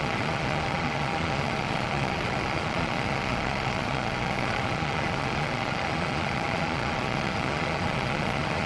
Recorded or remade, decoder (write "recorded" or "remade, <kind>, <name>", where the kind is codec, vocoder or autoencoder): remade, vocoder, Vocos